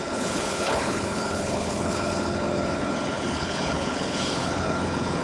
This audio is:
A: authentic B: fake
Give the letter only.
B